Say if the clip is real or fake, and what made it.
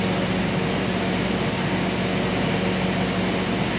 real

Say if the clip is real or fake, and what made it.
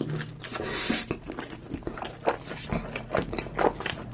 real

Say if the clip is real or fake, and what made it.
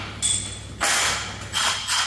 real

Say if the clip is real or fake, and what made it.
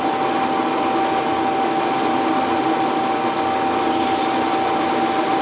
real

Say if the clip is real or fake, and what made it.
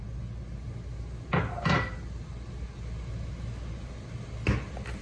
real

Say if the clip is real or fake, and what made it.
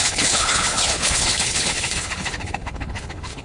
fake, codec, HILCodec